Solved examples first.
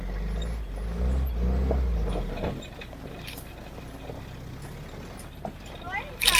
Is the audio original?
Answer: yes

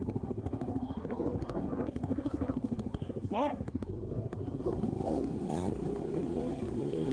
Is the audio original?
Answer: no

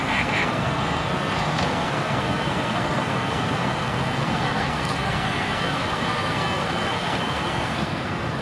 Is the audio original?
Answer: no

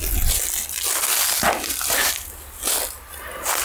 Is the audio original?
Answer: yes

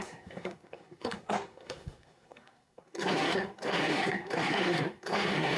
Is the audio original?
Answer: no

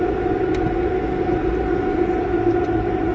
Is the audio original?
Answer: yes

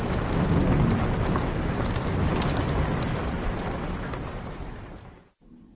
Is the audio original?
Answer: yes